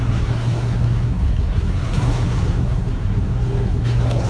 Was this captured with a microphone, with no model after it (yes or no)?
no